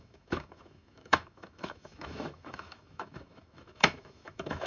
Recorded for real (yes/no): no